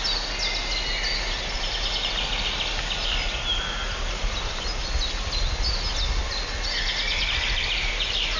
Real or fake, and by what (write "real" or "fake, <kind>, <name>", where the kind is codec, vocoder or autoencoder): real